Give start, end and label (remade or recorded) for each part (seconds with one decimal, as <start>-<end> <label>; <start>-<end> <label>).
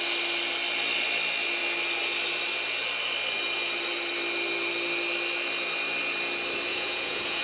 0.0-6.7 recorded; 6.7-7.4 remade